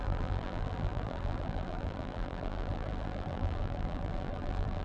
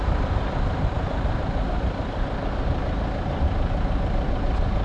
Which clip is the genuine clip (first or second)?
second